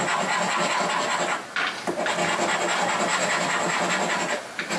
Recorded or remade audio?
recorded